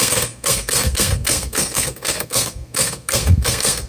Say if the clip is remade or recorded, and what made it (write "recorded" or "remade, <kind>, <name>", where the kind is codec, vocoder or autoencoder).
remade, codec, SNAC